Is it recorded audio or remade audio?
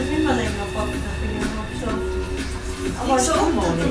recorded